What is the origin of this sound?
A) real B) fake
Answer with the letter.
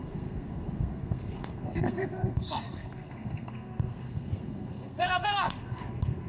B